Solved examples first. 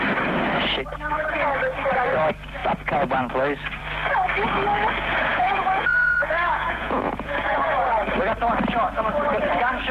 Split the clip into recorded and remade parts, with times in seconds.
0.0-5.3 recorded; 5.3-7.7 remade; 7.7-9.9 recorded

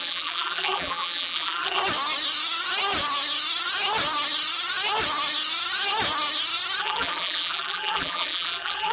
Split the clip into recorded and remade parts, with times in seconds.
0.0-1.8 remade; 1.8-6.8 recorded; 6.8-8.9 remade

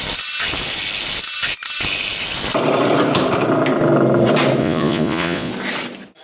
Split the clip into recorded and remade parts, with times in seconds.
0.0-4.6 recorded; 4.6-5.5 remade; 5.5-6.2 recorded

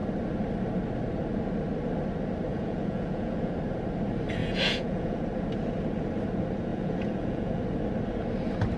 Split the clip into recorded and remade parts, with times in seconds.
0.0-2.5 recorded; 2.5-3.5 remade; 3.5-4.4 recorded; 4.4-5.2 remade; 5.2-6.7 recorded; 6.7-7.6 remade; 7.6-8.8 recorded

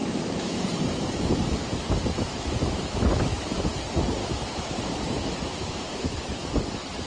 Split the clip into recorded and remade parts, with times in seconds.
0.0-0.6 remade; 0.6-2.3 recorded; 2.3-3.7 remade; 3.7-4.2 recorded; 4.2-6.2 remade; 6.2-7.1 recorded

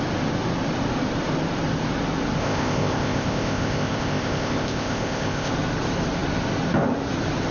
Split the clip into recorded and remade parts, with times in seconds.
0.0-2.4 recorded; 2.4-5.5 remade; 5.5-7.5 recorded

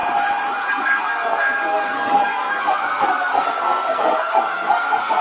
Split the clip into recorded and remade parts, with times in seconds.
0.0-0.7 recorded; 0.7-5.2 remade

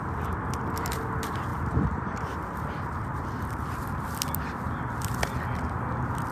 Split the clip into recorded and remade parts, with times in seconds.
0.0-6.3 recorded